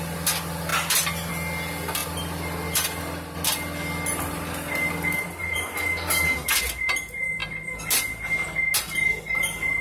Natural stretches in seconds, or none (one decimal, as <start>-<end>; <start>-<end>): 0.0-9.8